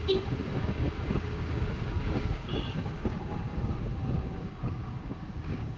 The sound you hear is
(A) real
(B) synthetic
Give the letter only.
B